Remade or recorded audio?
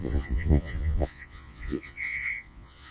remade